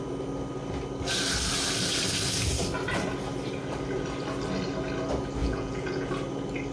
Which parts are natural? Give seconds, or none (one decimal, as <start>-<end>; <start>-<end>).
0.0-5.4; 6.1-6.7

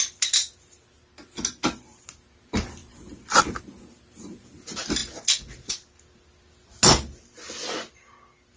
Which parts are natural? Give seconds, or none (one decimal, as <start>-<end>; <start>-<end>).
0.0-8.6

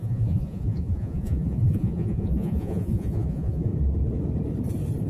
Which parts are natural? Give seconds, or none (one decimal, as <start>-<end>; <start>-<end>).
3.7-5.1